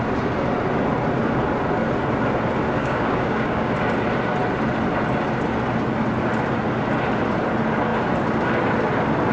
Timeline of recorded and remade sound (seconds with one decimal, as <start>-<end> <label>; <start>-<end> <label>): 0.0-2.8 recorded; 2.8-3.7 remade; 3.7-9.3 recorded